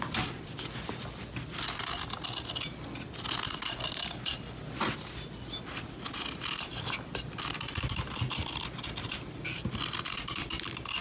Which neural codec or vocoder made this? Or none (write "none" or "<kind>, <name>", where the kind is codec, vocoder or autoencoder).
none